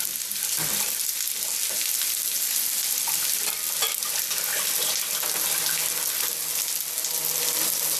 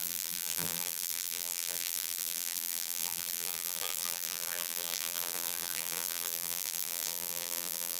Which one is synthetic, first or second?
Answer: second